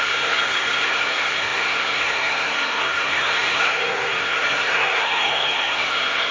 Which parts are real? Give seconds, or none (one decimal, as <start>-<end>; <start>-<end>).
none